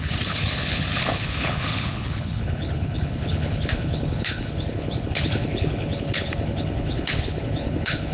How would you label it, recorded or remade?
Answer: remade